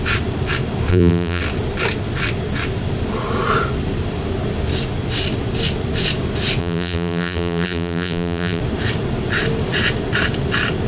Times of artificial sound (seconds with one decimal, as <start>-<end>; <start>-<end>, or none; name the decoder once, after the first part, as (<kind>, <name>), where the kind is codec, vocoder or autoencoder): 0.9-1.4 (vocoder, BigVGAN v2); 6.6-8.6